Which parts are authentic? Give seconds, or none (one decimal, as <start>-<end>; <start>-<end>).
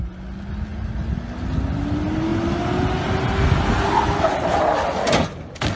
0.0-5.8